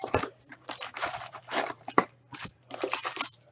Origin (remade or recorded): remade